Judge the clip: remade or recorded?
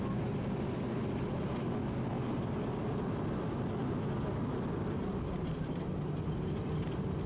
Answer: recorded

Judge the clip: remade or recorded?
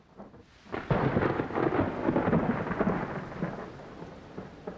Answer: recorded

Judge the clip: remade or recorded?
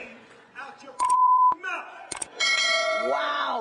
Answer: remade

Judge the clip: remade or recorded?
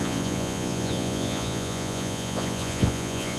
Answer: remade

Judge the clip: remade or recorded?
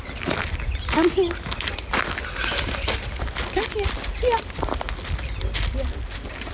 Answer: recorded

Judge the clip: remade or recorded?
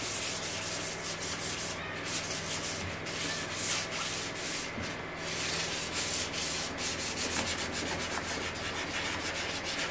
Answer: recorded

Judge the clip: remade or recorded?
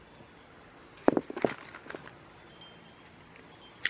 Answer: recorded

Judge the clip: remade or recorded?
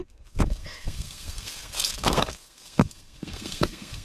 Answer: remade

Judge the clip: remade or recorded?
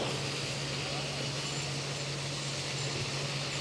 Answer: recorded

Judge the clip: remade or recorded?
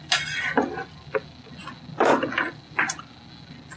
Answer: recorded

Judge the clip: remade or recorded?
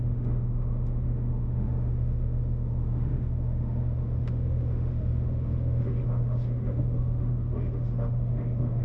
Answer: remade